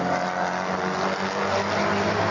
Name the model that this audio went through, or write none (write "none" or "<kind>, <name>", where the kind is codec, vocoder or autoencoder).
none